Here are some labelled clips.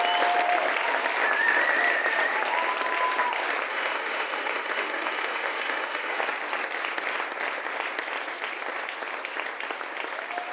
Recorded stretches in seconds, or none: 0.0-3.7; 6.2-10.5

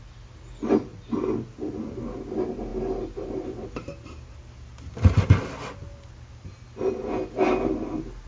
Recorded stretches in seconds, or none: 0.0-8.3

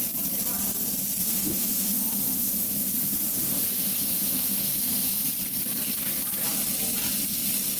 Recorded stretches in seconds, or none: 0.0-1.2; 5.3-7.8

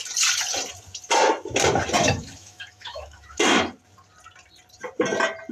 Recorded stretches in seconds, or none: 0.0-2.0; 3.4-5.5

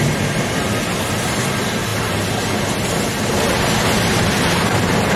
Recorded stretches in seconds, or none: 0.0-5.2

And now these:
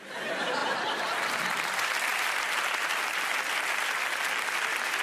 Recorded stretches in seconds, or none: 0.0-5.0